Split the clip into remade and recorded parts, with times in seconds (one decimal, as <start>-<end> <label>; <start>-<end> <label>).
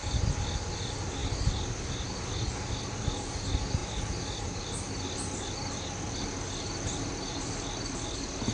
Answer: 0.0-8.5 recorded